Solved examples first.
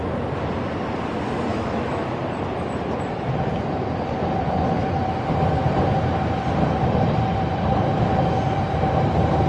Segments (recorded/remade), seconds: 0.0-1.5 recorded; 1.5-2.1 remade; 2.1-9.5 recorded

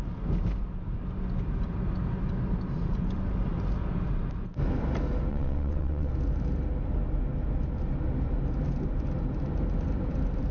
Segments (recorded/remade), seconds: 0.0-5.3 recorded; 5.3-6.1 remade; 6.1-10.5 recorded

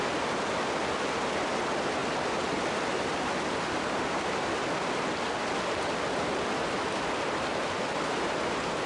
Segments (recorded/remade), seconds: 0.0-8.9 recorded

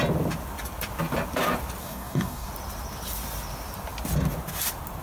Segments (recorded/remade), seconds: 0.0-1.8 recorded; 1.8-2.5 remade; 2.5-5.0 recorded